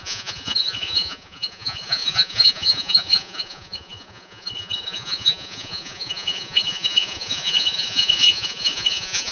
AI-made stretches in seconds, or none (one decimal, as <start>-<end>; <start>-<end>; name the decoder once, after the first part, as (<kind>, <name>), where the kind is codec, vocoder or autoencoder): 0.0-9.3 (vocoder, Vocos)